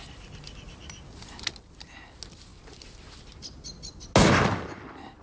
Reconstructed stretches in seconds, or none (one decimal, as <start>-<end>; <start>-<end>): none